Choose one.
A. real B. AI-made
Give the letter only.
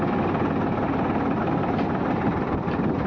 A